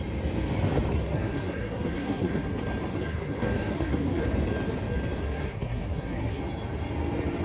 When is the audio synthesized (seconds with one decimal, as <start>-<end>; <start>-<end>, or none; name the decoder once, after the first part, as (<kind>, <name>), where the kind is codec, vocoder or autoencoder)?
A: 0.9-2.5 (codec, SNAC); 2.9-4.2; 5.2-6.4